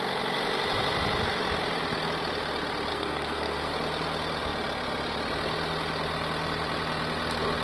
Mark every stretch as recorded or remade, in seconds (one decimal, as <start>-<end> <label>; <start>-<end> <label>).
0.0-2.9 recorded; 2.9-3.7 remade; 3.7-7.6 recorded